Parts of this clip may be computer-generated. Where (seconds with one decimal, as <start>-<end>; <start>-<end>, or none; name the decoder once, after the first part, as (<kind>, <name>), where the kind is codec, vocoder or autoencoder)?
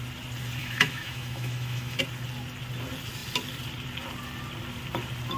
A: 0.6-2.0 (autoencoder, DAC-VAE)